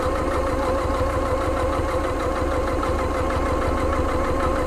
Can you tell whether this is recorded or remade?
recorded